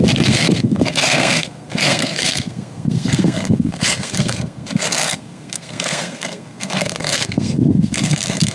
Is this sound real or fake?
fake